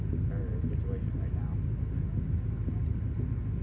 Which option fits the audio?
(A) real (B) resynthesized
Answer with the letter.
A